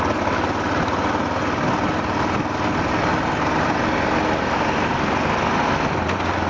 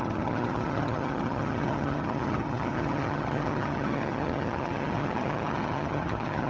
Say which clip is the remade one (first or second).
second